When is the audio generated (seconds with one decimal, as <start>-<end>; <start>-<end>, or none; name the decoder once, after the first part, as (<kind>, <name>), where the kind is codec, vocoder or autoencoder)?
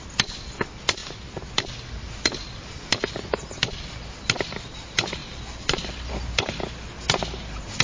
5.2-6.1 (vocoder, BigVGAN v2)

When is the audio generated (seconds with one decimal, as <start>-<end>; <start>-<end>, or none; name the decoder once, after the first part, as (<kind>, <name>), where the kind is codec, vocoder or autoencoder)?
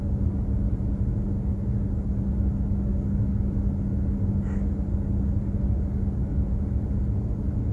none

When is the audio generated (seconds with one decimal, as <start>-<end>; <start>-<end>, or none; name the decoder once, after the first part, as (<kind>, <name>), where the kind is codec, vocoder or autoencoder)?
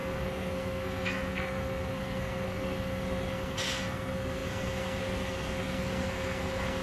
0.0-6.8 (codec, SNAC)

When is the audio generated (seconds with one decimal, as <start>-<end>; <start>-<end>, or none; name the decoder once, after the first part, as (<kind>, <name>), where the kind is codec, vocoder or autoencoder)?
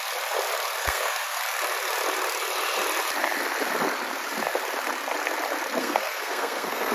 0.8-1.4 (codec, SNAC); 5.8-6.9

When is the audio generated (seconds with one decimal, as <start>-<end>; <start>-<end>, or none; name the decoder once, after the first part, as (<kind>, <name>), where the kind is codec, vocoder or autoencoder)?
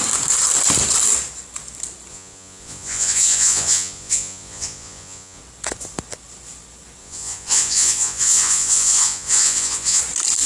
2.1-5.4 (vocoder, Vocos); 7.0-10.0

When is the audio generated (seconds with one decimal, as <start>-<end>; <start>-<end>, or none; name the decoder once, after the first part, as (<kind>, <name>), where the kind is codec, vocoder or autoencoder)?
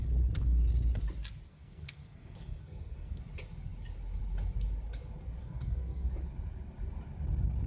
1.5-3.2 (codec, SNAC); 5.4-6.1